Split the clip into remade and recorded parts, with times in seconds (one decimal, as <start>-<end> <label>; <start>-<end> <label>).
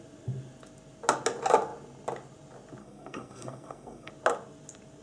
0.0-2.8 recorded; 2.8-4.1 remade; 4.1-5.0 recorded